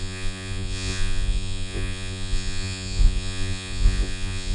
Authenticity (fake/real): fake